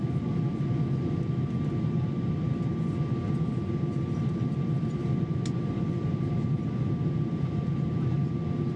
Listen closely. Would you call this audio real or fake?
real